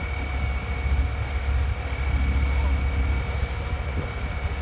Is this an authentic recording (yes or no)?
yes